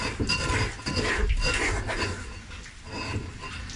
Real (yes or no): yes